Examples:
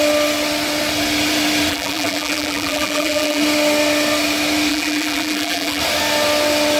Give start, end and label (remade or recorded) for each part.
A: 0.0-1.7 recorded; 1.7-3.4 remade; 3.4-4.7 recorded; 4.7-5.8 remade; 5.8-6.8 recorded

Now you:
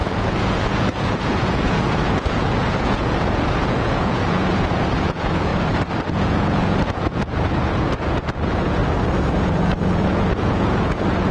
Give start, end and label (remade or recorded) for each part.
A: 0.0-5.5 remade; 5.5-6.1 recorded; 6.1-8.8 remade; 8.8-9.3 recorded; 9.3-11.3 remade

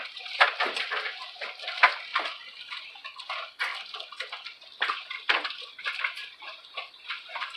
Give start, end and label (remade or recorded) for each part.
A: 0.0-6.2 recorded; 6.2-7.6 remade

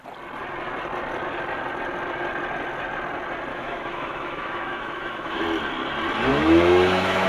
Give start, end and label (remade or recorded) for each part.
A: 0.0-3.5 recorded; 3.5-5.4 remade; 5.4-6.3 recorded; 6.3-7.3 remade

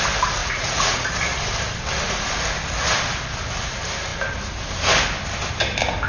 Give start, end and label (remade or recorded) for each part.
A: 0.0-0.4 recorded; 0.4-1.1 remade; 1.1-6.1 recorded

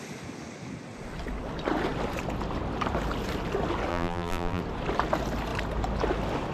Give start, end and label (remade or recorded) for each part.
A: 0.0-3.9 recorded; 3.9-4.6 remade; 4.6-6.5 recorded